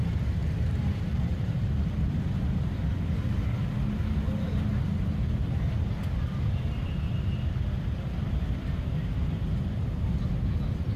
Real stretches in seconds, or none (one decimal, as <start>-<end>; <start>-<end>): 0.0-0.4; 2.7-11.0